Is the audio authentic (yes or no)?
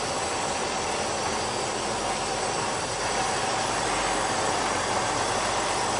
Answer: yes